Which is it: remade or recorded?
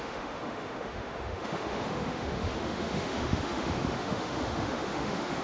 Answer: remade